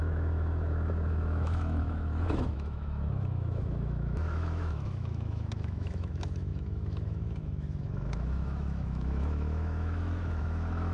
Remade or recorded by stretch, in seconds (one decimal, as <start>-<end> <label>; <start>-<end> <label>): 0.0-10.9 remade